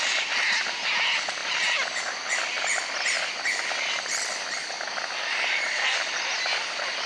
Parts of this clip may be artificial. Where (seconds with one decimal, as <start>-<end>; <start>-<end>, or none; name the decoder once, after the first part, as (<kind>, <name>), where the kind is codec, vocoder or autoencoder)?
none

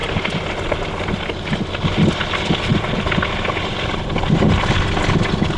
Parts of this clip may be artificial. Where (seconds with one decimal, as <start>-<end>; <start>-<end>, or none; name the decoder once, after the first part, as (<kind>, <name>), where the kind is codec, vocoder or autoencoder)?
none